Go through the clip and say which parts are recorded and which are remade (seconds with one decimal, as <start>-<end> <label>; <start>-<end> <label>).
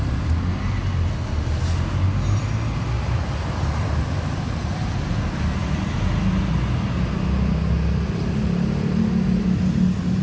0.0-10.2 recorded